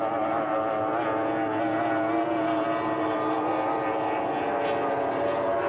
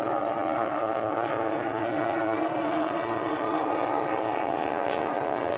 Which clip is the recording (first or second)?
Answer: first